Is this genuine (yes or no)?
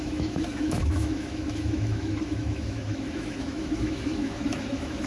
no